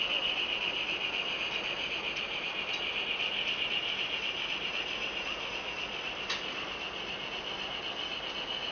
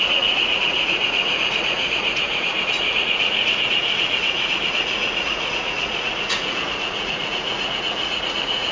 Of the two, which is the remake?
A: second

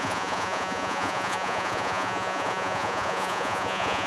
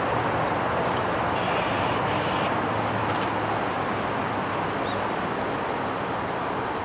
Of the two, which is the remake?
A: first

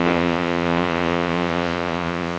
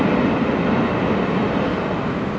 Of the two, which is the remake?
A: first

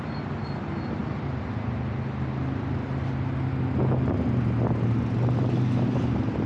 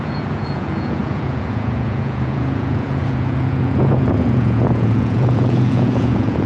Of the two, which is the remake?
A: second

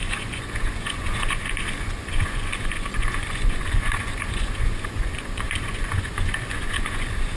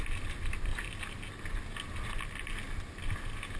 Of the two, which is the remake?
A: first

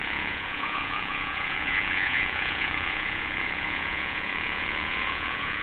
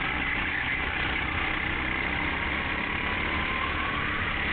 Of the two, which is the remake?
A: first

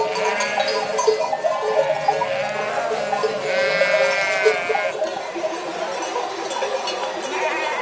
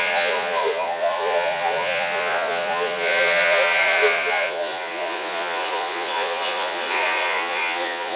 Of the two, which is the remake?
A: second